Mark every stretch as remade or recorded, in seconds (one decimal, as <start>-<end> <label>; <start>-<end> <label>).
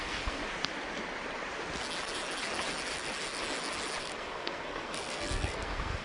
0.0-0.4 remade; 0.4-4.0 recorded; 4.0-6.0 remade